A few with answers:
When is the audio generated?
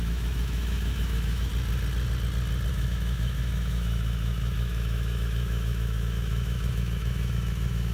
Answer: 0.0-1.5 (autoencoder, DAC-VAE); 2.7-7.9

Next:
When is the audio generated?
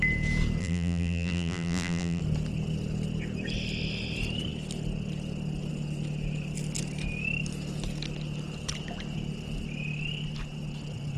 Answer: 0.6-2.2 (vocoder, BigVGAN v2)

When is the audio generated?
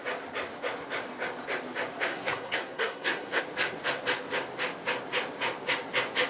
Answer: 2.1-3.4 (codec, SNAC)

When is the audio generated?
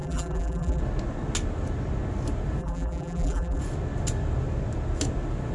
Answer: 0.0-0.8 (vocoder, BigVGAN v2); 2.6-3.6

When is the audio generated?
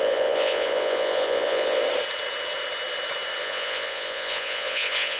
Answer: 0.0-1.8 (vocoder, Vocos); 3.4-5.2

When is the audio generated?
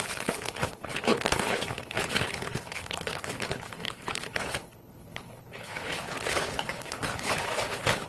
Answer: 0.0-8.1 (codec, HILCodec)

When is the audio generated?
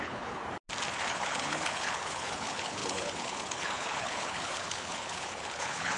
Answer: 0.0-0.4 (codec, HILCodec); 1.0-6.0